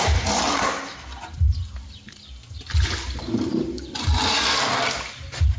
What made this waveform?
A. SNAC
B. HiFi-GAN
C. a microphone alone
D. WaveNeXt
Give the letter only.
C